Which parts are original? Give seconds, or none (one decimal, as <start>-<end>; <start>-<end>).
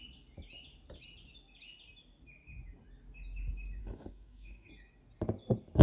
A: 0.0-3.8; 4.7-5.8